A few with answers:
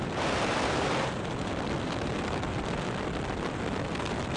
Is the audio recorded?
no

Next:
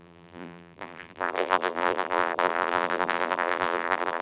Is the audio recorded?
no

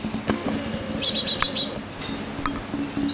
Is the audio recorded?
yes